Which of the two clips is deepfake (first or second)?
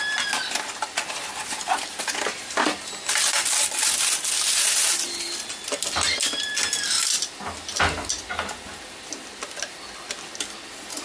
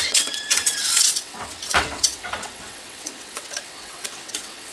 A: second